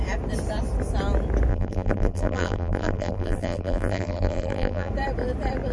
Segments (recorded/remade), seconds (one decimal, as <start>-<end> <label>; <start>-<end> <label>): 0.0-1.5 recorded; 1.5-4.9 remade; 4.9-5.7 recorded

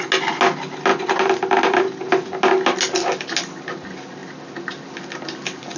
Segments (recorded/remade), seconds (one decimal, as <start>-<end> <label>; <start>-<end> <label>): 0.0-0.9 recorded; 0.9-2.1 remade; 2.1-5.8 recorded

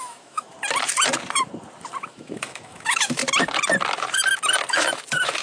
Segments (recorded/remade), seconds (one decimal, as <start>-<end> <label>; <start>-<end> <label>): 0.0-0.5 remade; 0.5-2.1 recorded; 2.1-3.2 remade; 3.2-4.7 recorded; 4.7-5.4 remade